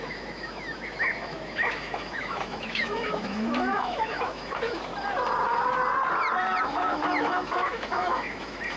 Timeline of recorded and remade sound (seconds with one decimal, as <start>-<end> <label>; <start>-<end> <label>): 0.0-4.9 remade; 4.9-6.6 recorded; 6.6-8.8 remade